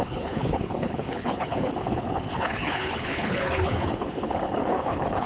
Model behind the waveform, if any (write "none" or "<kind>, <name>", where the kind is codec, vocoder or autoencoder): codec, HILCodec